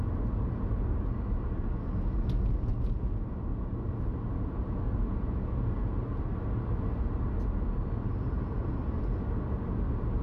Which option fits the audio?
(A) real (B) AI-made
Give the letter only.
A